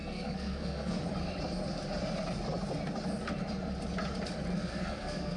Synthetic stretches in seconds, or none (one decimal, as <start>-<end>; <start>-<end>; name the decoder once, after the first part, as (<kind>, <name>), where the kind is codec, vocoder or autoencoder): 0.0-1.0 (codec, SNAC); 4.5-5.4

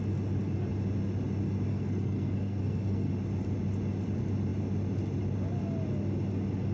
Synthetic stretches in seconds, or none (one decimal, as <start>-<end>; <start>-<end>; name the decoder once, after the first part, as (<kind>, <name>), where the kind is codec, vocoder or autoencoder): 1.7-3.1 (codec, SNAC)

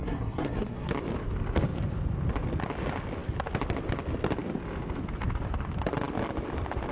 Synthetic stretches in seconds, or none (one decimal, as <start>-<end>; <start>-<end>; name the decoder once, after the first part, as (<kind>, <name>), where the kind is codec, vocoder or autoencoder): 0.0-0.9 (codec, SNAC)

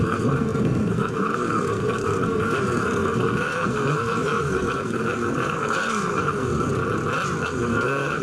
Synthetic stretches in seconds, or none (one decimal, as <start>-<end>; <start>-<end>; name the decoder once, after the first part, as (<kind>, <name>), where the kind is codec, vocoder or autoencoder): 0.0-6.7 (codec, SNAC); 7.4-8.2

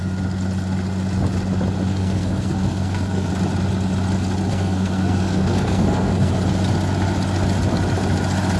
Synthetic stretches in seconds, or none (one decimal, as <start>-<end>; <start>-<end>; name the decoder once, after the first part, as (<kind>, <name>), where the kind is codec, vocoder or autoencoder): 1.9-3.3 (codec, SNAC); 4.5-6.3

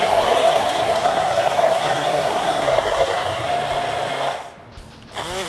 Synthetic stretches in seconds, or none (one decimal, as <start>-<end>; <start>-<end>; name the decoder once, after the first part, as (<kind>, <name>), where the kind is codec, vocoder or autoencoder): 0.0-3.5 (codec, SNAC)

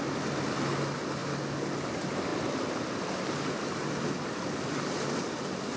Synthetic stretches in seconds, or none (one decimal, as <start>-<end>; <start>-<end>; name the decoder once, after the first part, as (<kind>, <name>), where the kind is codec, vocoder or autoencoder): none